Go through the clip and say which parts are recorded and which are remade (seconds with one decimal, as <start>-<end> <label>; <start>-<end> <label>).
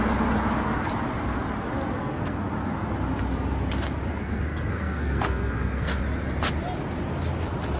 0.0-2.0 recorded; 2.0-2.5 remade; 2.5-4.2 recorded; 4.2-6.0 remade; 6.0-7.8 recorded